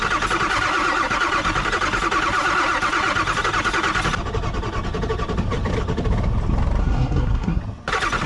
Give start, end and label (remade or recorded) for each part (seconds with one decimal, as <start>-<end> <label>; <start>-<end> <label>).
0.0-6.8 recorded; 6.8-7.6 remade; 7.6-8.3 recorded